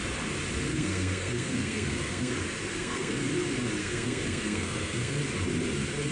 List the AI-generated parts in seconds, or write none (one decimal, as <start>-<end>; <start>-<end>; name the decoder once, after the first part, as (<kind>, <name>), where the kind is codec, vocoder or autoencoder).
0.7-2.3 (codec, SNAC); 2.7-3.3; 3.8-5.2